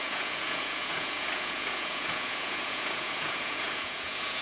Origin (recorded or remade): remade